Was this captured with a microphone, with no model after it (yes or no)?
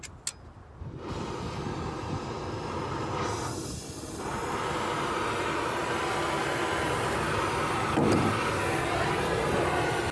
yes